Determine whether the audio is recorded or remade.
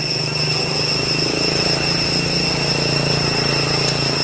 recorded